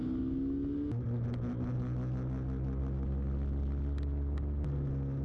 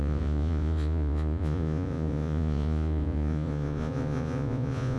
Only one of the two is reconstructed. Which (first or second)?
second